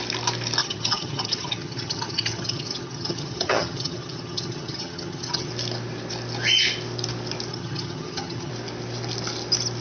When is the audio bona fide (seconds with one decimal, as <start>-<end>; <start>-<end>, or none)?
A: 0.0-0.6; 5.5-7.5; 8.5-9.8